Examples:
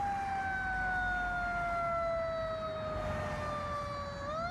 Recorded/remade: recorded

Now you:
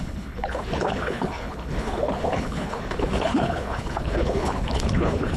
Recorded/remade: remade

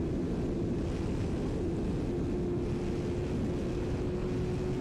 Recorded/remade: recorded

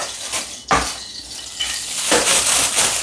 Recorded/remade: recorded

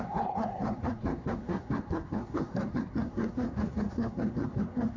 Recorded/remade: remade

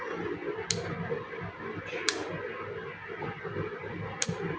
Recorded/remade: recorded